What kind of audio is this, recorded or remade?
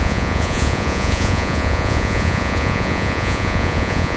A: remade